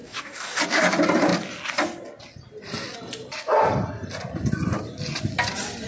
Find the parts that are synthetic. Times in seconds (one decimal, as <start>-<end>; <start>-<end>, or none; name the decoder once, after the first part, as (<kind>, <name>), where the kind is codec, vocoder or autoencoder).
0.0-0.6 (codec, DAC)